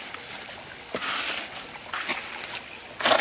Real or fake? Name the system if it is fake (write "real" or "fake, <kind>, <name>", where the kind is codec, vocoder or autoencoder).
real